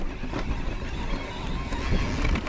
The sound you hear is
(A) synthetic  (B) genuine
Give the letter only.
B